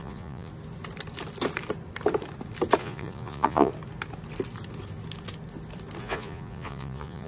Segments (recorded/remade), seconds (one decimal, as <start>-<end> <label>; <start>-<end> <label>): 0.0-0.5 remade; 0.5-2.8 recorded; 2.8-3.7 remade; 3.7-6.0 recorded; 6.0-7.3 remade